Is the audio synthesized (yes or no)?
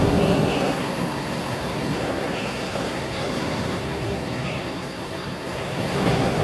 yes